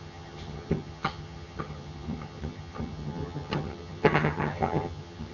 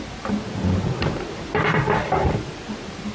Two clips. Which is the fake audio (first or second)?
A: first